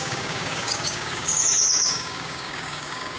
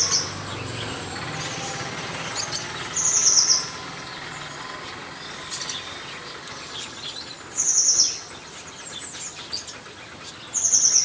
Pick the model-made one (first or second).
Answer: first